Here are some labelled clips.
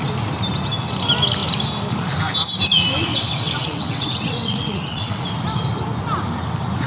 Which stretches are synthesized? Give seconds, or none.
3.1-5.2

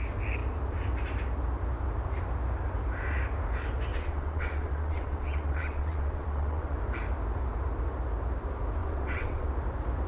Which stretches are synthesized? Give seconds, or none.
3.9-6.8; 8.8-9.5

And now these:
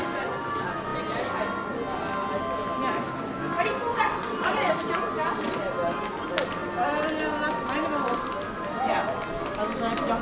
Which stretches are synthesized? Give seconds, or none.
3.9-4.7

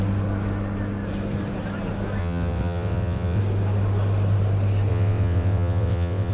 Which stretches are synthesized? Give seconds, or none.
2.2-3.4; 4.9-6.3

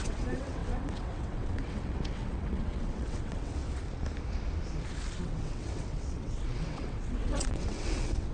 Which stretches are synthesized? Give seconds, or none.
0.0-3.6; 5.2-8.3